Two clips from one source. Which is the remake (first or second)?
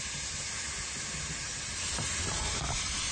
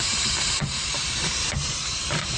second